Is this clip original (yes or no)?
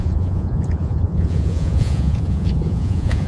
no